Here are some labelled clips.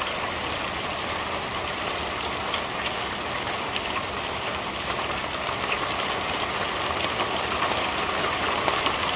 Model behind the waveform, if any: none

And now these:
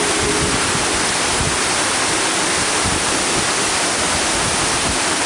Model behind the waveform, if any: none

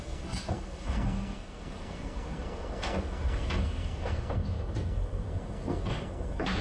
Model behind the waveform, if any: codec, SNAC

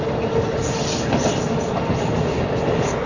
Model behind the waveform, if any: none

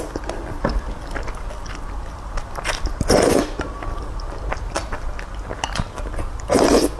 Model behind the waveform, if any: none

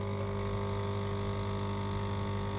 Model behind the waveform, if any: none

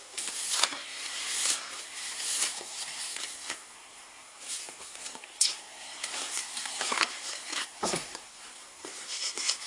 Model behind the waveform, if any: codec, SNAC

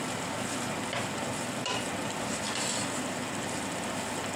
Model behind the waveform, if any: none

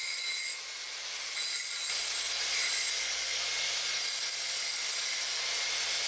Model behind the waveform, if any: none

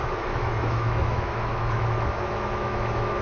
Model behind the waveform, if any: autoencoder, DAC-VAE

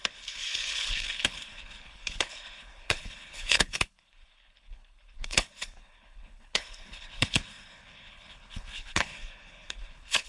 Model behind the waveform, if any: codec, HILCodec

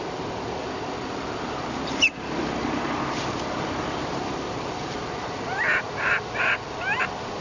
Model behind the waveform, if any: vocoder, BigVGAN v2